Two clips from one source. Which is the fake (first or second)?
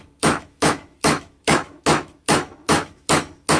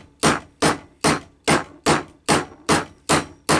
first